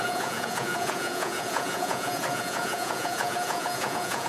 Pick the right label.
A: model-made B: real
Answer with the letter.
A